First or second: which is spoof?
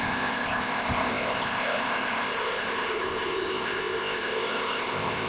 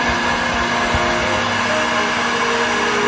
first